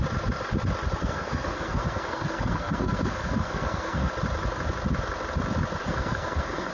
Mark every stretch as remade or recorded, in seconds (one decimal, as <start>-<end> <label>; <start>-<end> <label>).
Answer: 0.0-1.0 recorded; 1.0-4.1 remade; 4.1-5.8 recorded; 5.8-6.7 remade